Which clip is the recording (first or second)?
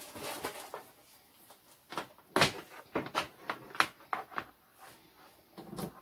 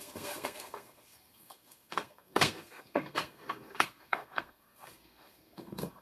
first